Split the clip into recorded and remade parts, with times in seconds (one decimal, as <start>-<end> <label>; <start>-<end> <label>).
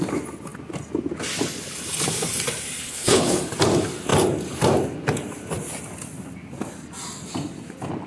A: 0.0-2.8 recorded; 2.8-3.4 remade; 3.4-8.1 recorded